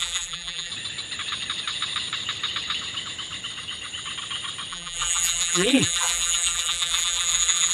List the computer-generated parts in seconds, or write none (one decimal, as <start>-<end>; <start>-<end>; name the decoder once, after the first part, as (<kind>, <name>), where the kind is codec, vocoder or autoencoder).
0.0-0.7 (vocoder, BigVGAN v2); 4.7-7.7

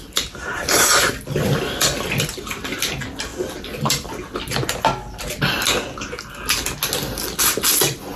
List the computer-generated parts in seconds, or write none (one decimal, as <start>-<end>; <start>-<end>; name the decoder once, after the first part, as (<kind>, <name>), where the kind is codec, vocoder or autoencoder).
0.0-3.3 (vocoder, BigVGAN v2)

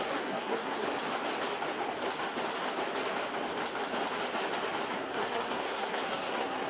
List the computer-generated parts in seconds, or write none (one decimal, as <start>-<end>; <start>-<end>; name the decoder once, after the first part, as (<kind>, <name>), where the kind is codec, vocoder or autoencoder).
0.0-0.9 (codec, SNAC); 4.9-6.7

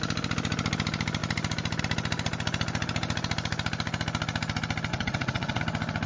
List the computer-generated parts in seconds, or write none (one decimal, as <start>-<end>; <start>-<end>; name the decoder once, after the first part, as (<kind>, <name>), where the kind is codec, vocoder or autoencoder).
4.9-5.6 (vocoder, WaveNeXt)

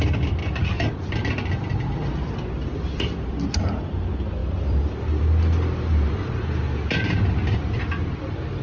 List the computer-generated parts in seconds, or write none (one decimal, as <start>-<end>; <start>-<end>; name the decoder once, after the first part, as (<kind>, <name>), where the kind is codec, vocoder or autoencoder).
0.4-0.9 (vocoder, BigVGAN v2); 2.6-3.3; 4.4-5.2

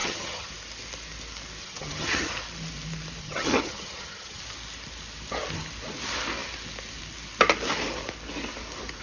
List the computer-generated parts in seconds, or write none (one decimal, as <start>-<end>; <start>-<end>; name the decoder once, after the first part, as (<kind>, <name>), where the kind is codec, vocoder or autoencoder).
0.0-0.5 (vocoder, HiFi-GAN); 1.6-2.3; 3.2-4.4

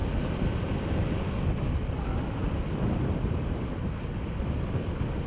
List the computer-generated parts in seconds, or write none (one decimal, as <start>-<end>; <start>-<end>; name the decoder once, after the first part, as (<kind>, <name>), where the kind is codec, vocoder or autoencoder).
none

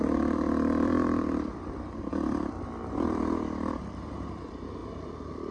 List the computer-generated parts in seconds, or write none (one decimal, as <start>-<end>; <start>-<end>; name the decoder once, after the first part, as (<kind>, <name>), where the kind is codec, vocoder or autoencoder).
0.0-5.5 (vocoder, BigVGAN v2)